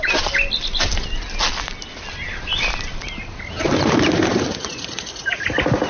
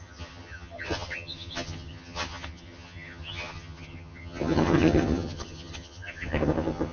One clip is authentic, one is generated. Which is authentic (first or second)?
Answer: first